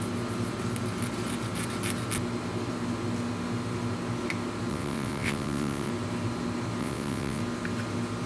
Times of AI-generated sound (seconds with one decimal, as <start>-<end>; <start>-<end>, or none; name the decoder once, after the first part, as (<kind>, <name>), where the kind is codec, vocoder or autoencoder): 4.7-5.9 (vocoder, WaveNeXt); 6.8-7.4